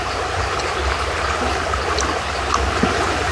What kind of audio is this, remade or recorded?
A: recorded